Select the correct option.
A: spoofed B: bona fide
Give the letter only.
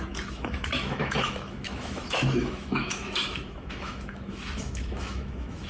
A